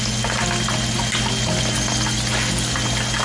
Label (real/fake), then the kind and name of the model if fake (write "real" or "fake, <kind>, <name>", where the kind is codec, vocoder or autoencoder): real